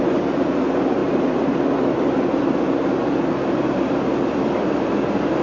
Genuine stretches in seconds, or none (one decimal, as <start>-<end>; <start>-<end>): 0.0-5.4